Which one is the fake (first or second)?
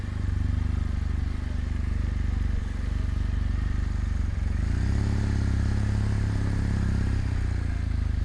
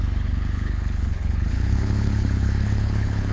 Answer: second